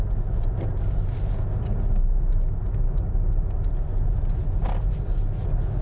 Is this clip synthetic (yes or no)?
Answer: no